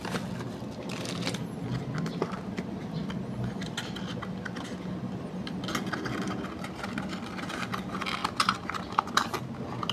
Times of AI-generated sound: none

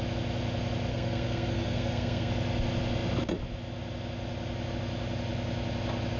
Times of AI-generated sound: 0.9-2.3 (codec, SNAC)

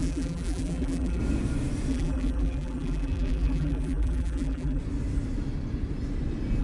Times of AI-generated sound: 0.0-1.2 (vocoder, BigVGAN v2); 1.9-4.8

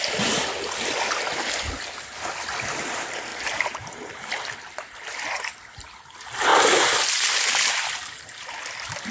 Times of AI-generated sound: 3.3-4.1 (vocoder, BigVGAN v2)

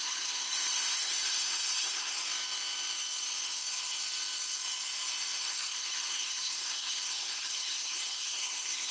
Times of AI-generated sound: 0.0-2.2 (codec, SNAC); 5.4-8.9

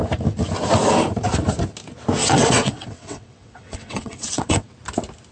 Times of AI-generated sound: 2.2-4.7 (vocoder, WaveNeXt)

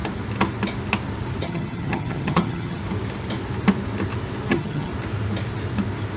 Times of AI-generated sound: 1.4-2.8 (vocoder, HiFi-GAN); 4.5-4.9

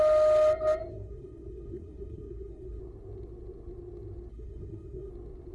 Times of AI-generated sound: 0.9-2.8 (codec, SNAC); 4.3-5.1